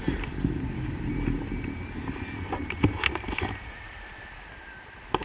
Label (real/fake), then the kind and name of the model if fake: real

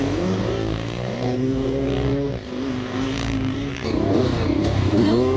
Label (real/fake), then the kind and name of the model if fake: fake, codec, DAC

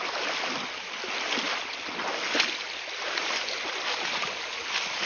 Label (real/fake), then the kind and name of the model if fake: real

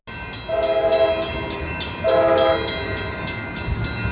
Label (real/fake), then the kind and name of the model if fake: real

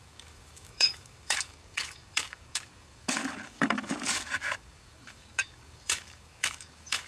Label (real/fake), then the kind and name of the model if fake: fake, codec, DAC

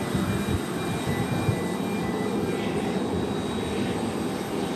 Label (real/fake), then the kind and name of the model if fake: real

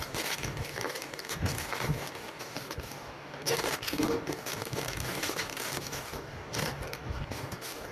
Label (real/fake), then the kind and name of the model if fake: fake, codec, DAC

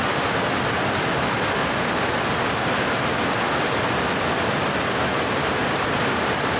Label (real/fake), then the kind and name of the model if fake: real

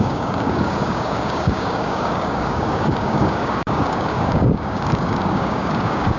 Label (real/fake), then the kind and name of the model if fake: fake, codec, DAC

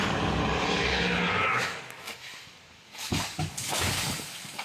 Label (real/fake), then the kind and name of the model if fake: fake, codec, DAC